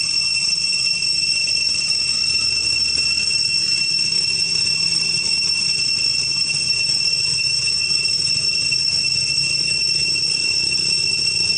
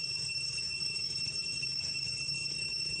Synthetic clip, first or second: second